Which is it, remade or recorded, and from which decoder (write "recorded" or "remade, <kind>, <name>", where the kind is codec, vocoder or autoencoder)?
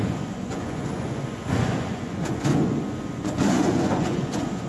remade, vocoder, Vocos